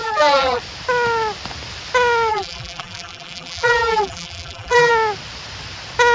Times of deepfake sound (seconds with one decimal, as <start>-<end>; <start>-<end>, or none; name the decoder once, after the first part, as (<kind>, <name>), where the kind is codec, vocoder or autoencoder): 0.0-0.6 (vocoder, BigVGAN v2); 2.3-4.9